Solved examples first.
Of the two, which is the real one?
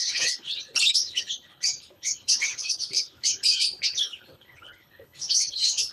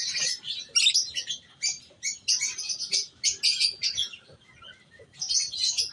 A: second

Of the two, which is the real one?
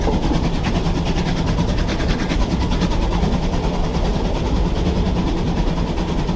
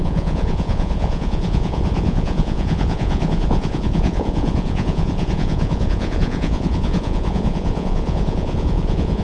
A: first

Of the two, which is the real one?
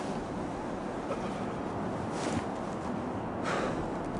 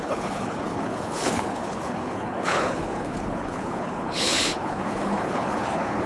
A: first